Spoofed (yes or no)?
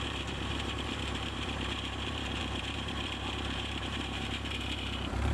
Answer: yes